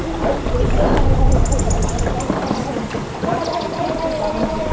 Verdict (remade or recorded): recorded